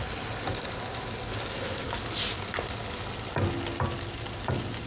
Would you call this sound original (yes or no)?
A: yes